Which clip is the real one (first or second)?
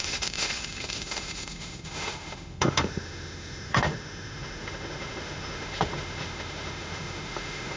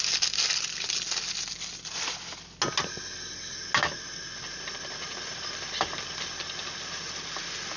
second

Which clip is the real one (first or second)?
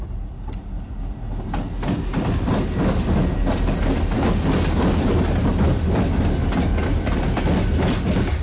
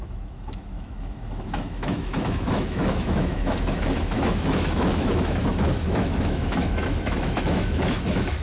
first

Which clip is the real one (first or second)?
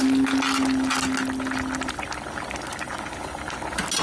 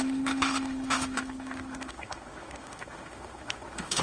first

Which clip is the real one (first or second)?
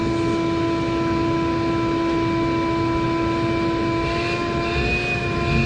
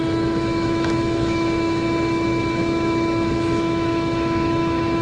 first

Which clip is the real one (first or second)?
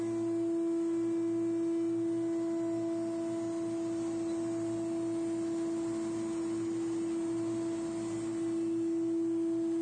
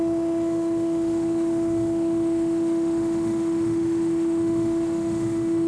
first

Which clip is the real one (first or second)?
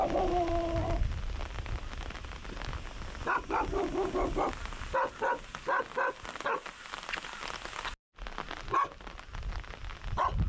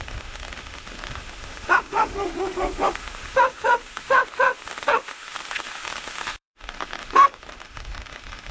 first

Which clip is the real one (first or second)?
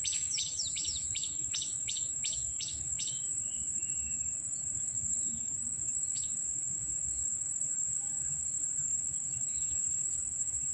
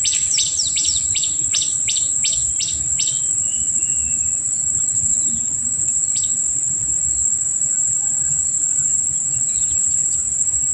second